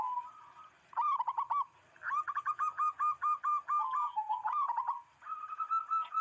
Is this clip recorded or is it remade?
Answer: recorded